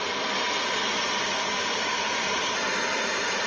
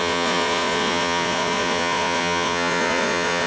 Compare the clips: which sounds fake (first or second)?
second